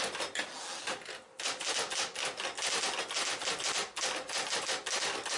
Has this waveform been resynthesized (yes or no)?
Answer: no